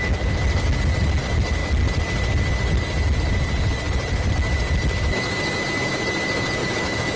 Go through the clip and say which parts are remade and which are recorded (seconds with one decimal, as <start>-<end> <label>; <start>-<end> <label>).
0.0-6.6 recorded; 6.6-7.2 remade